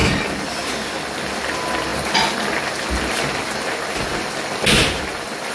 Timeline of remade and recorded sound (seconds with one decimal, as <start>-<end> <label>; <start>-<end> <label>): 0.0-5.5 recorded